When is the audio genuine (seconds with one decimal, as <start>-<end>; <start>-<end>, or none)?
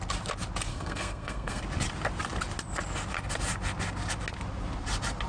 0.0-0.7; 1.6-5.3